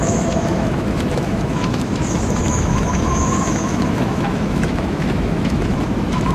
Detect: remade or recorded remade